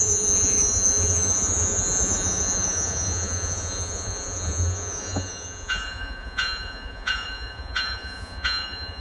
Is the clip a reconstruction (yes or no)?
yes